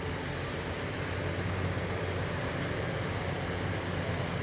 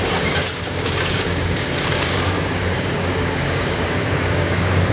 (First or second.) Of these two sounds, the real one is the first